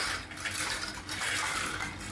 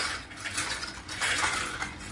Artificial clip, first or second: second